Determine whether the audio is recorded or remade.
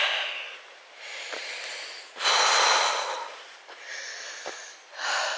recorded